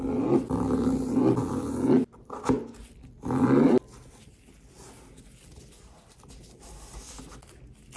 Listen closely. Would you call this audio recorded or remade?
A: recorded